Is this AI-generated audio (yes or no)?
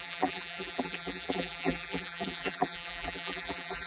yes